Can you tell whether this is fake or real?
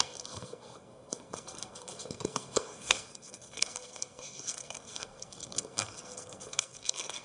fake